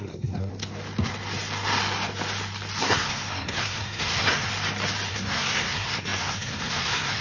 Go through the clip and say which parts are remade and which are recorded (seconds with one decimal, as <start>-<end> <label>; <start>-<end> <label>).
0.0-0.5 remade; 0.5-2.8 recorded; 2.8-4.5 remade; 4.5-5.1 recorded; 5.1-7.2 remade